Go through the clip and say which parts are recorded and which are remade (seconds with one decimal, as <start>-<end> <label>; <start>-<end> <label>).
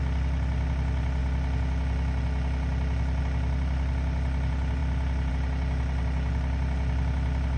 0.0-7.6 recorded